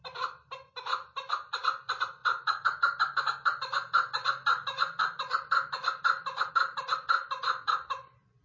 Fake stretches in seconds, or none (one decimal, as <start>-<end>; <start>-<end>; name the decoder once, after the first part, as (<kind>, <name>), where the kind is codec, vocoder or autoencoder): none